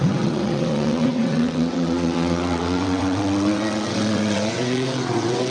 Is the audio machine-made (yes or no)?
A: yes